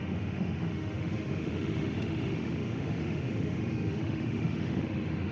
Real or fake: fake